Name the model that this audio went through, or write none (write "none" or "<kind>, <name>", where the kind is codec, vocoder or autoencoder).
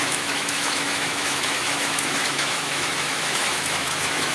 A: autoencoder, DAC-VAE